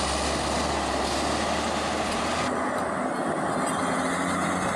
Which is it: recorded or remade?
recorded